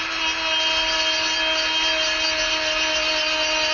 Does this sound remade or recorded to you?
recorded